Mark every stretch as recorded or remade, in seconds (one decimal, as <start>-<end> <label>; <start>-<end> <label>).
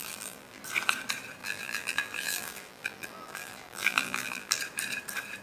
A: 0.0-0.6 remade; 0.6-1.4 recorded; 1.4-4.6 remade; 4.6-5.4 recorded